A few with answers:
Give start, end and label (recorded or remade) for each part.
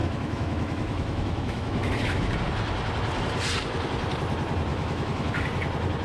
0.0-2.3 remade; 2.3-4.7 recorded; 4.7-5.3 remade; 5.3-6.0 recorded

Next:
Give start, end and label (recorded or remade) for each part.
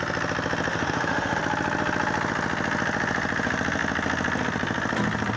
0.0-0.7 recorded; 0.7-1.4 remade; 1.4-5.4 recorded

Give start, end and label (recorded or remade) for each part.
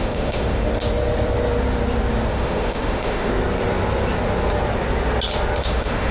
0.0-0.6 remade; 0.6-2.3 recorded; 2.3-3.3 remade; 3.3-5.6 recorded; 5.6-6.1 remade